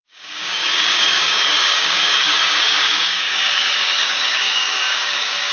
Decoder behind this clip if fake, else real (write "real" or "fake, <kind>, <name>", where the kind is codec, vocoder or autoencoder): fake, codec, DAC